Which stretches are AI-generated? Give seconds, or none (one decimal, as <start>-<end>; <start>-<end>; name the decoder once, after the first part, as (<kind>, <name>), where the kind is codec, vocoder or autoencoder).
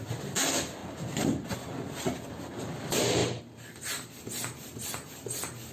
0.0-0.8 (vocoder, BigVGAN v2); 2.4-5.7